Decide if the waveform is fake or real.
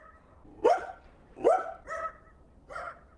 real